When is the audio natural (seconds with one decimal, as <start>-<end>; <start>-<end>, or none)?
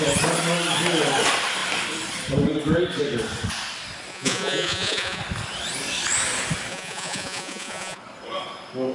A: 0.0-4.1; 5.2-6.7; 8.0-8.9